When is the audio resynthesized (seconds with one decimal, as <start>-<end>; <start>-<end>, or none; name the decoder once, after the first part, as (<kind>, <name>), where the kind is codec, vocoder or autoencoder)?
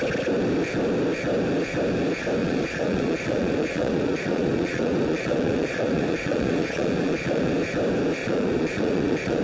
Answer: 2.4-7.5 (vocoder, Vocos); 8.2-9.4